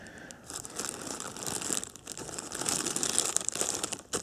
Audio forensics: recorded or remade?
remade